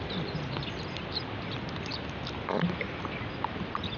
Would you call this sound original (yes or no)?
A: yes